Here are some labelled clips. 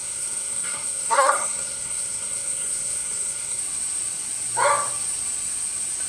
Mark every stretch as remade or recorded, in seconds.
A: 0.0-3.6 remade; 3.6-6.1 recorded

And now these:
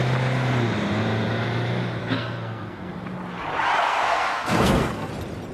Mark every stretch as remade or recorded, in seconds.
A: 0.0-2.0 recorded; 2.0-2.9 remade; 2.9-3.8 recorded; 3.8-5.1 remade; 5.1-5.5 recorded

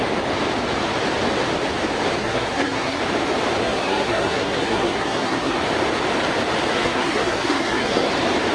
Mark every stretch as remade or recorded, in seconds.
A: 0.0-2.2 recorded; 2.2-3.0 remade; 3.0-3.6 recorded; 3.6-5.6 remade; 5.6-6.7 recorded; 6.7-8.1 remade; 8.1-8.5 recorded

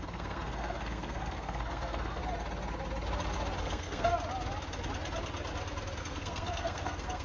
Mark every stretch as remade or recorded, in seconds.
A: 0.0-2.2 remade; 2.2-3.6 recorded; 3.6-4.1 remade; 4.1-6.0 recorded; 6.0-7.2 remade

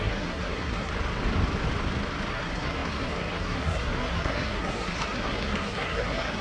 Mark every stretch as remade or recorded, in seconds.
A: 0.0-0.9 remade; 0.9-2.3 recorded; 2.3-6.4 remade